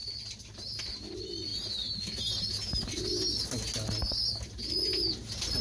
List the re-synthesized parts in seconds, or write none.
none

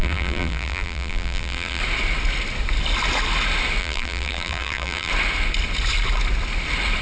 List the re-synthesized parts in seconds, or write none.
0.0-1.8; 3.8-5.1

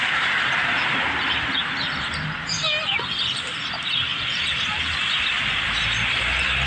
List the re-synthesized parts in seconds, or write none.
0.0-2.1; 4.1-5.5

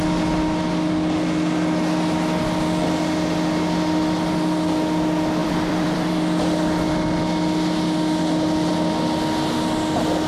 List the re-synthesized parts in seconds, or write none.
5.4-6.1